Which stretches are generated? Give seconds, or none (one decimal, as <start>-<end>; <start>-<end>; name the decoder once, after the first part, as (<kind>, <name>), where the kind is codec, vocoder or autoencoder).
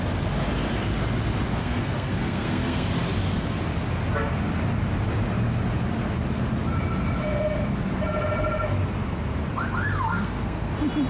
1.6-2.9 (codec, SNAC); 10.1-10.7